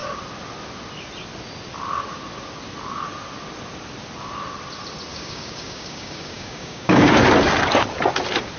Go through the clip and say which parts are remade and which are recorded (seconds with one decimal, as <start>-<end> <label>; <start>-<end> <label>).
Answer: 0.0-5.1 recorded; 5.1-7.2 remade; 7.2-8.6 recorded